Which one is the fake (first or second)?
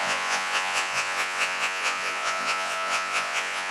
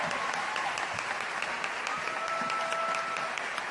first